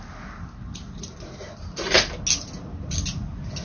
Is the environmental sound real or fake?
real